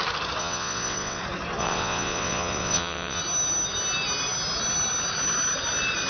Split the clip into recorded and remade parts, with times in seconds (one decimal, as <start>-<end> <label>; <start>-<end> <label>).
0.0-0.4 recorded; 0.4-1.2 remade; 1.2-1.6 recorded; 1.6-3.2 remade; 3.2-6.1 recorded